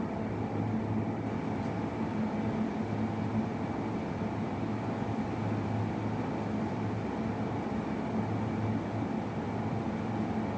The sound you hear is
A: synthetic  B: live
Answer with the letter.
B